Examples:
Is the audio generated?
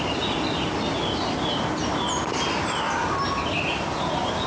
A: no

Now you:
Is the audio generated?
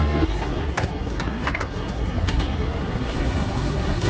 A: yes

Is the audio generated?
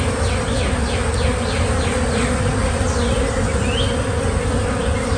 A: no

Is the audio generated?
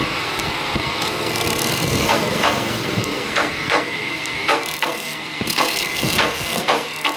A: yes